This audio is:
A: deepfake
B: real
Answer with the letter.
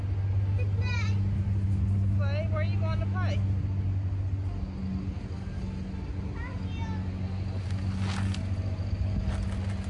B